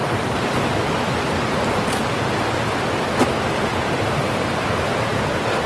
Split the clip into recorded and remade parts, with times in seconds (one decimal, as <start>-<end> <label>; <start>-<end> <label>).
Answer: 0.0-3.7 recorded; 3.7-5.2 remade; 5.2-5.7 recorded